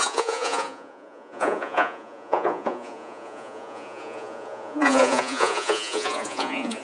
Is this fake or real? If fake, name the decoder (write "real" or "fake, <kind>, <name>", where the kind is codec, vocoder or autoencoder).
fake, vocoder, Vocos